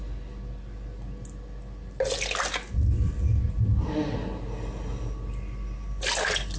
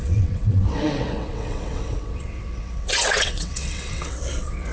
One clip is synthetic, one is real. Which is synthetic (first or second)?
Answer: second